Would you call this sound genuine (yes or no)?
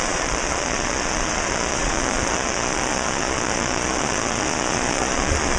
no